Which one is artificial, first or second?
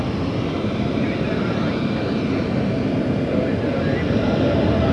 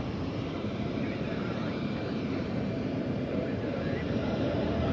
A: second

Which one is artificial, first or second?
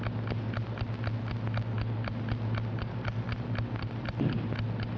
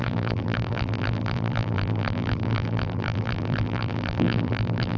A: second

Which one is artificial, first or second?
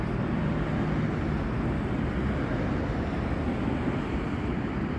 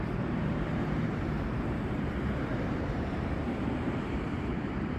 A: second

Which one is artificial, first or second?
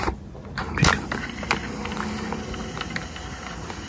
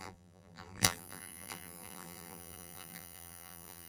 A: second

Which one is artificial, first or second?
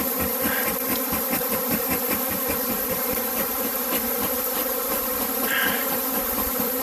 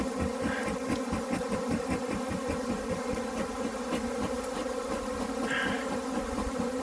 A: first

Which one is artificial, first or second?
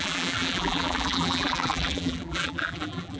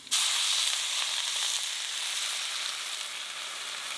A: first